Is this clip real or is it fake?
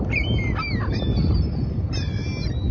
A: real